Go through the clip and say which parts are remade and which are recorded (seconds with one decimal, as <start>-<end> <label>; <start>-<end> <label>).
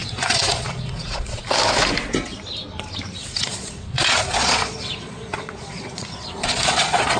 0.0-1.4 remade; 1.4-3.2 recorded; 3.2-7.2 remade